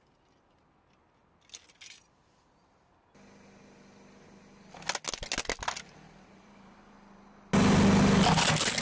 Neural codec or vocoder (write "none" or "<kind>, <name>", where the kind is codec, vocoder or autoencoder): none